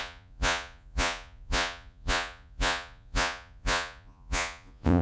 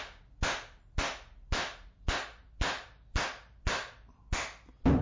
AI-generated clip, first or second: first